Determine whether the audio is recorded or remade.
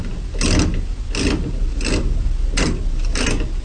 recorded